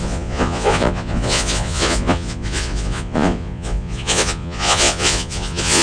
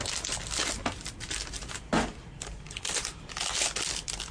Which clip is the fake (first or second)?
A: first